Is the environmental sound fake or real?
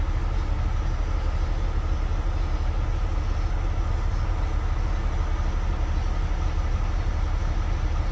real